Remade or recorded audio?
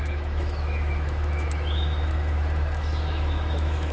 remade